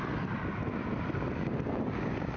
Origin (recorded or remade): recorded